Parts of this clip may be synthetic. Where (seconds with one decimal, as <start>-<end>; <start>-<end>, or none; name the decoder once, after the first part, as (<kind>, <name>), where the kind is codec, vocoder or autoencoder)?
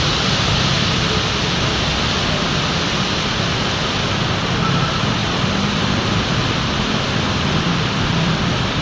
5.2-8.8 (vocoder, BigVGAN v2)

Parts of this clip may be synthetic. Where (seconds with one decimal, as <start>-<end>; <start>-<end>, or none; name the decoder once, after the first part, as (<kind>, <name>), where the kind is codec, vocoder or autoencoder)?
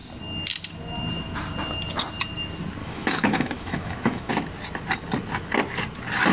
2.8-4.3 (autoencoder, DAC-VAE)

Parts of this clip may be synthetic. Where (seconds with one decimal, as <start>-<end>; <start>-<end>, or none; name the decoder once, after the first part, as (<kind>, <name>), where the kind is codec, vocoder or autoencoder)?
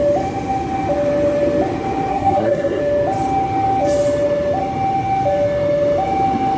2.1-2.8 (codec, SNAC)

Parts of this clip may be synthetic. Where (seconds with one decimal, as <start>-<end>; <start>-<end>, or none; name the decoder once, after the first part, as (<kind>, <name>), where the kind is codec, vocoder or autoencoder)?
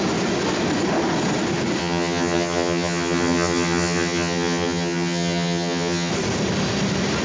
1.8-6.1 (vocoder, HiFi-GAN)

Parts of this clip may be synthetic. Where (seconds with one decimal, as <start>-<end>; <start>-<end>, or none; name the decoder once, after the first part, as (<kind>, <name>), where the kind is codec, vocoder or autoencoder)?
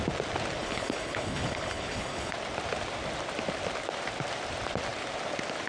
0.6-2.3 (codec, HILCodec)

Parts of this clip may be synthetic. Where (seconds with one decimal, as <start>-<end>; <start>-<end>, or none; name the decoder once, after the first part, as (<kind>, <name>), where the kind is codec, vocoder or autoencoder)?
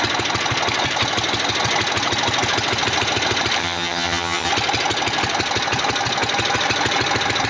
3.6-4.5 (vocoder, HiFi-GAN)